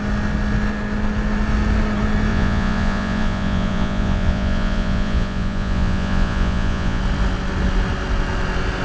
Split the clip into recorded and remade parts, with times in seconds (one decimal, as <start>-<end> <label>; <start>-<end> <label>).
0.0-2.3 recorded; 2.3-7.0 remade; 7.0-8.8 recorded